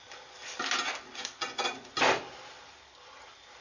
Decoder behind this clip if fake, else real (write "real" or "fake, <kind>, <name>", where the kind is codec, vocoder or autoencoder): real